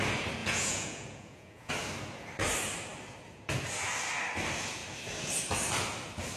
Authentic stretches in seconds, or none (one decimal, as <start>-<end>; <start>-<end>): 0.0-0.4; 1.7-6.4